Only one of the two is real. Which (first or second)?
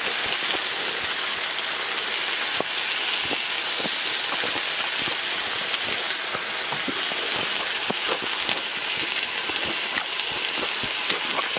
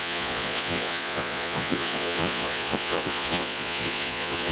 first